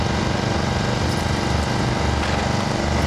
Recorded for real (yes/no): no